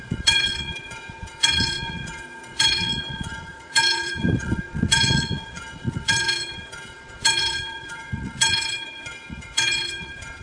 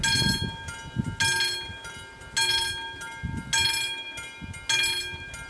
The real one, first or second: second